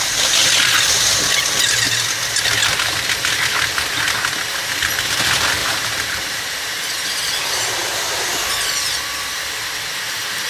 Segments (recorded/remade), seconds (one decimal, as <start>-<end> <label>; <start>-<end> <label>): 0.0-5.6 recorded; 5.6-6.9 remade; 6.9-10.5 recorded